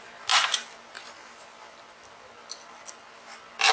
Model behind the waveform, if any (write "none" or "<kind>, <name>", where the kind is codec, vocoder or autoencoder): none